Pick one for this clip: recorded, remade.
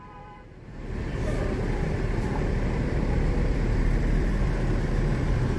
remade